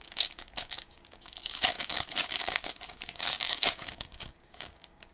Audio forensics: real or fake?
fake